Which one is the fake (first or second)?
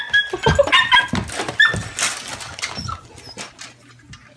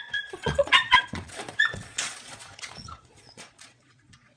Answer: second